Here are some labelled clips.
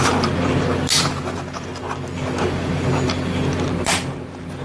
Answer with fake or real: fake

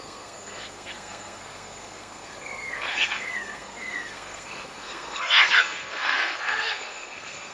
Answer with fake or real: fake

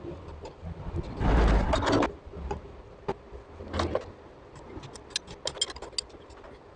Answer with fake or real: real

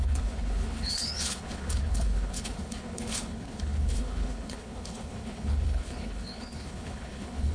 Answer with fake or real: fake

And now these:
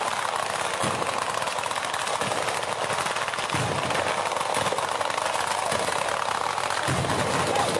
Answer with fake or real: real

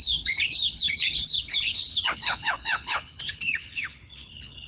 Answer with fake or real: fake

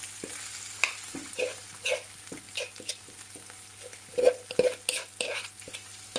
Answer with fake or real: real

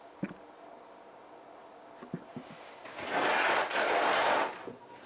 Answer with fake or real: real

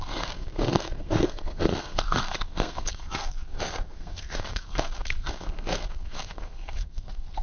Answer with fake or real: fake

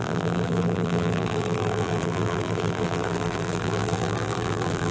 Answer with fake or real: fake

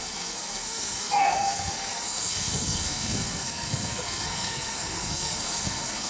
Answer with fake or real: fake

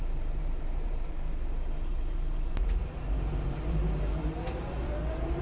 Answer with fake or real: fake